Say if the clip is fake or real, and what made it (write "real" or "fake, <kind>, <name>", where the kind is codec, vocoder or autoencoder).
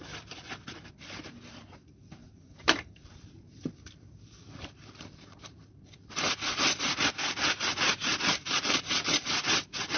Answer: fake, vocoder, BigVGAN v2